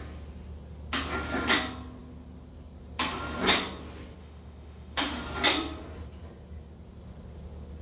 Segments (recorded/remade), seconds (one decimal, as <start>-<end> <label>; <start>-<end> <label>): 0.0-4.2 recorded; 4.2-5.2 remade; 5.2-7.8 recorded